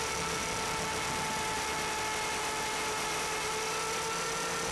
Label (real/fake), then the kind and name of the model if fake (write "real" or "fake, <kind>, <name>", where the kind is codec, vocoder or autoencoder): real